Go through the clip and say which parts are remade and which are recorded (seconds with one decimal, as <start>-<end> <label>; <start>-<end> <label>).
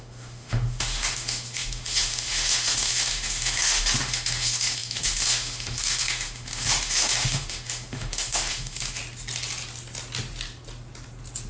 0.0-9.0 remade; 9.0-11.5 recorded